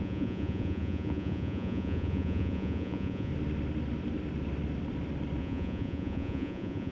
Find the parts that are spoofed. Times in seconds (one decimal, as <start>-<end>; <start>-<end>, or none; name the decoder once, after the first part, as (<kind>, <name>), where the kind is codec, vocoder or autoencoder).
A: 0.0-3.3 (vocoder, Vocos); 5.4-6.9